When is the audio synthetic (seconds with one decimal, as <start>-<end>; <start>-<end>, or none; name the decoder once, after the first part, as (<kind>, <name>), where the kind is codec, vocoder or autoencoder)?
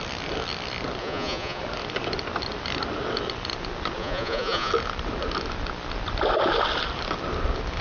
1.0-1.6 (vocoder, Vocos); 4.0-4.7